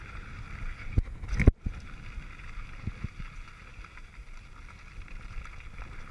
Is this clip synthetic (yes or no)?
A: no